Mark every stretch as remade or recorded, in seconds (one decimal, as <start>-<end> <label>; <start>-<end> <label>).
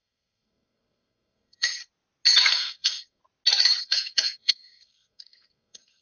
0.0-1.8 remade; 1.8-2.5 recorded; 2.5-3.2 remade; 3.2-3.8 recorded; 3.8-6.0 remade